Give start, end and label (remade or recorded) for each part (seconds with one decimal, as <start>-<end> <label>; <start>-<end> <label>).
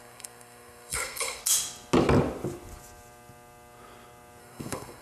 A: 0.0-1.4 remade; 1.4-4.4 recorded; 4.4-5.0 remade